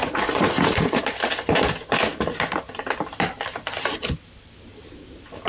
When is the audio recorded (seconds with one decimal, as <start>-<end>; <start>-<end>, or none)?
1.0-5.5